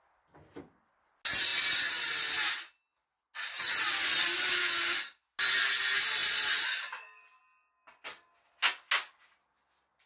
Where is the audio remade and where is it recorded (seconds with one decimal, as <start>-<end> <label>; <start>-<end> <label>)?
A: 0.0-10.1 recorded